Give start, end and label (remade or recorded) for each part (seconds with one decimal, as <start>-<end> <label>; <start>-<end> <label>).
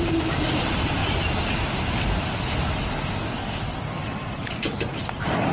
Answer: 0.0-1.0 remade; 1.0-4.3 recorded; 4.3-5.5 remade